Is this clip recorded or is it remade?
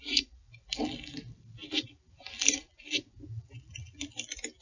recorded